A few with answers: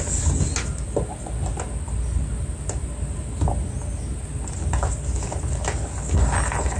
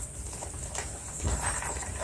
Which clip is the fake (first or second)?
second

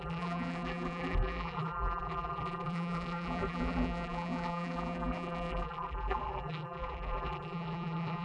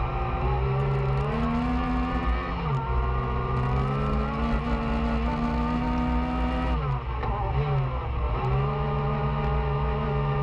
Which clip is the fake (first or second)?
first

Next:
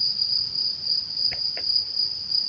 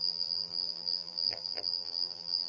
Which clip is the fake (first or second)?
second